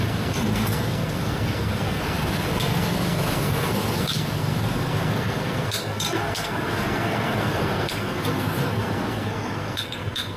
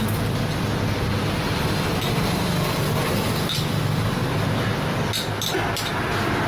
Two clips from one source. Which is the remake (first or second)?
first